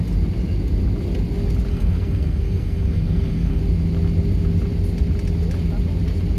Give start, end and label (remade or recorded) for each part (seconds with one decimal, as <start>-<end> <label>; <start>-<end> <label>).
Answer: 0.0-1.7 recorded; 1.7-3.6 remade; 3.6-6.4 recorded